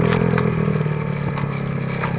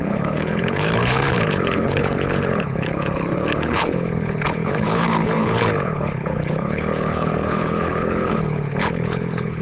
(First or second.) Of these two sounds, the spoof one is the second